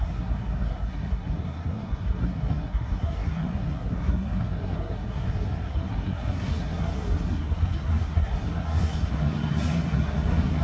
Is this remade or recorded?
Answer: remade